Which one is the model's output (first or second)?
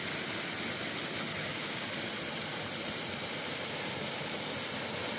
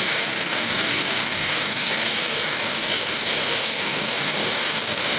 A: second